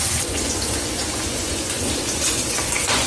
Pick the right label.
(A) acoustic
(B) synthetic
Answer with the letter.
B